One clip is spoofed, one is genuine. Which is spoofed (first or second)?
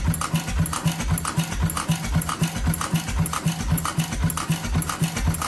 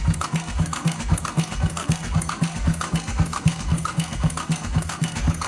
second